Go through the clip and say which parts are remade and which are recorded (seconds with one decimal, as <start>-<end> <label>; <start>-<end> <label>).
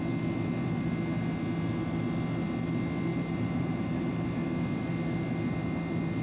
0.0-3.1 recorded; 3.1-4.1 remade; 4.1-6.2 recorded